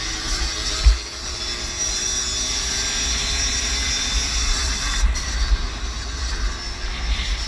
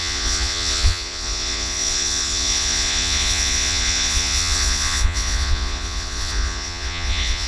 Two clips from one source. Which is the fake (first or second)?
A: second